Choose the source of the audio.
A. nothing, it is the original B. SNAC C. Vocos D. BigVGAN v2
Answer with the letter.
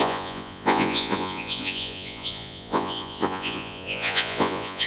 C